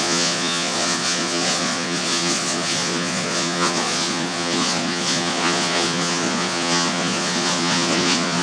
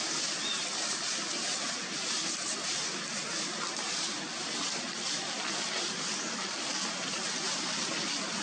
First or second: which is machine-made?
first